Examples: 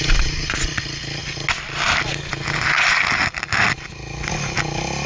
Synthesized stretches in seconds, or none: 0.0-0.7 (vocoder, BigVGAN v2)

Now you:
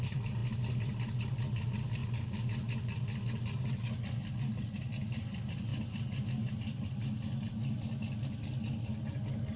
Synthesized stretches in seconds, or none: 0.0-0.4 (vocoder, BigVGAN v2); 1.5-2.0; 4.6-5.7

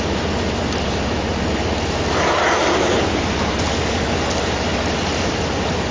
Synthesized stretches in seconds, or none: 4.7-5.4 (vocoder, BigVGAN v2)

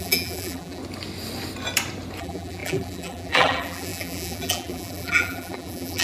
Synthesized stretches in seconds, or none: 0.0-0.8 (vocoder, BigVGAN v2); 2.2-6.0

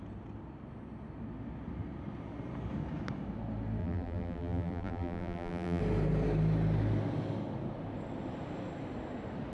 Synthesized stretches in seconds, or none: 3.8-5.8 (vocoder, BigVGAN v2)

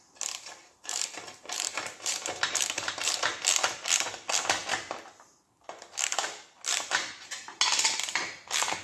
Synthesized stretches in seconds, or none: 0.6-3.3 (vocoder, BigVGAN v2); 6.7-7.6

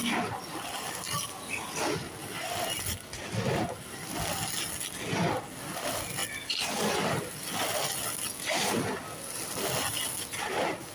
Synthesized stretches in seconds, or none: 6.2-7.5 (vocoder, BigVGAN v2)

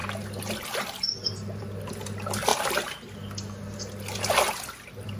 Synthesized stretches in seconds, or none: none